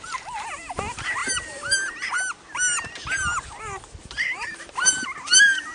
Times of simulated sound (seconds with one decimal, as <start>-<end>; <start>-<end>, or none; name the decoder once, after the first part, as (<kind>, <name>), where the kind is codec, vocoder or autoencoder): none